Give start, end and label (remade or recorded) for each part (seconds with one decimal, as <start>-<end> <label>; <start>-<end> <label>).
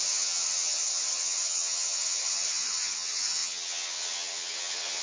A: 0.0-5.0 remade